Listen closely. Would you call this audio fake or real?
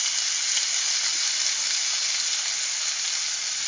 real